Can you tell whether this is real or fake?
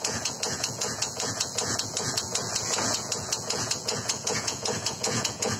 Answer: fake